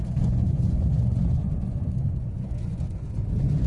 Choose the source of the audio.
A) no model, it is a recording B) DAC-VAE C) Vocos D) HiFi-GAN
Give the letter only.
C